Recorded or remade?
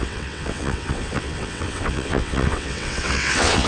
remade